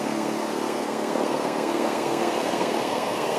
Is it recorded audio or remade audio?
remade